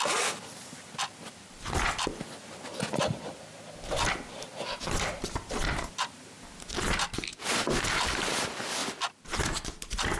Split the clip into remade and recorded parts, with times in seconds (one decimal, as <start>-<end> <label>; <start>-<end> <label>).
0.0-10.2 recorded